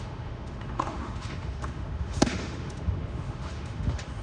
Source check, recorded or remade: remade